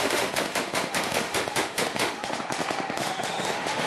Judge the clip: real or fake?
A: fake